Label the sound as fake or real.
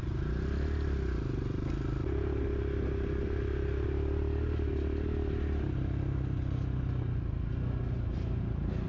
real